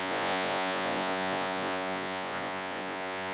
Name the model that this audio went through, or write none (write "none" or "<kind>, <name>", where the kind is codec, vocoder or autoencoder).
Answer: vocoder, Vocos